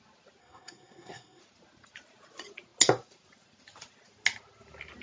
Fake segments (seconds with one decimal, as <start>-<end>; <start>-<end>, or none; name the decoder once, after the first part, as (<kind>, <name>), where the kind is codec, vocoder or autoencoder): 0.4-1.4 (codec, SNAC)